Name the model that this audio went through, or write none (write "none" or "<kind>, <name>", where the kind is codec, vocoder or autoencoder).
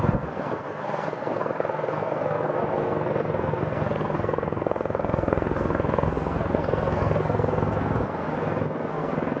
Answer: codec, SNAC